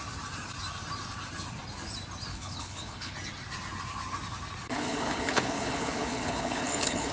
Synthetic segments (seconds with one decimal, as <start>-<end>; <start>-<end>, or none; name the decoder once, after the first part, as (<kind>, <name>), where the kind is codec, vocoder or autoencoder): 2.3-3.1 (codec, HILCodec); 4.6-7.1